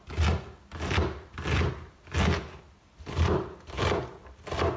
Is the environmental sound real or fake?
real